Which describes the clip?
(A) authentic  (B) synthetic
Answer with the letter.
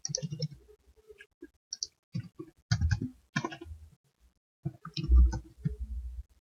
A